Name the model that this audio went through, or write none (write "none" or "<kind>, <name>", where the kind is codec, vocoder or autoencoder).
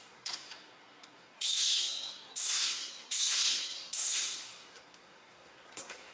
codec, SNAC